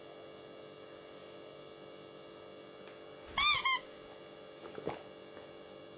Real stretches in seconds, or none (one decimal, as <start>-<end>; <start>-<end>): 0.0-6.0